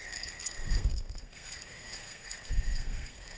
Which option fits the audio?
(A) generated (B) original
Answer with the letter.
A